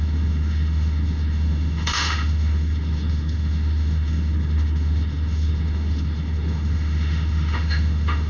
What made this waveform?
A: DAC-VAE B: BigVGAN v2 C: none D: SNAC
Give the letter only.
A